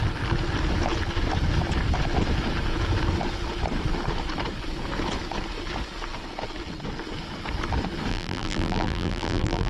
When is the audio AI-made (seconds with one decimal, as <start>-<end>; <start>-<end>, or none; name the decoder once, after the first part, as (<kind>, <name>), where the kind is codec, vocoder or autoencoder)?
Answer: 8.1-9.7 (vocoder, BigVGAN v2)